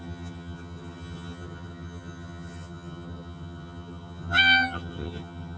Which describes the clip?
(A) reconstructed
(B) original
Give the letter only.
A